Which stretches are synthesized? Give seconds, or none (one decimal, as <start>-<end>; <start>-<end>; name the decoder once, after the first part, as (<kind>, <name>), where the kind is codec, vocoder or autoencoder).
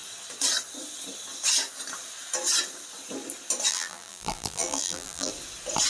3.7-5.3 (vocoder, BigVGAN v2)